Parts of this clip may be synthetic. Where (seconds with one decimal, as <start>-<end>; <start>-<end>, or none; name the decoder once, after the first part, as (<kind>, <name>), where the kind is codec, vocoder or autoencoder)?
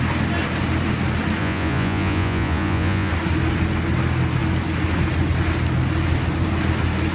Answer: 1.4-3.1 (vocoder, Vocos)